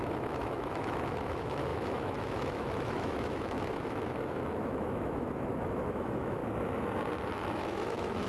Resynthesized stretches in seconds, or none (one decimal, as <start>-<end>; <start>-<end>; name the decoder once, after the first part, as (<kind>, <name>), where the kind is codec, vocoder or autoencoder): 0.0-6.4 (autoencoder, DAC-VAE); 7.3-8.3